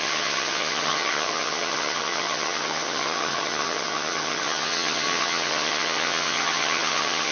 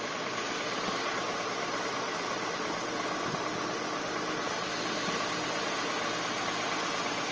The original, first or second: second